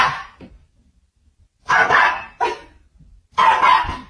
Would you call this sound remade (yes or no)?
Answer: no